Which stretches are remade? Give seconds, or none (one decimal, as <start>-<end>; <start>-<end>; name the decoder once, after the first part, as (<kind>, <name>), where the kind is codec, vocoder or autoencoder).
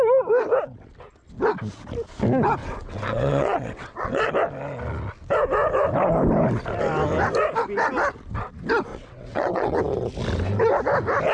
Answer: 2.6-4.3 (vocoder, WaveNeXt); 8.9-9.8